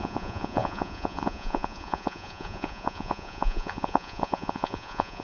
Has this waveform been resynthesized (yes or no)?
yes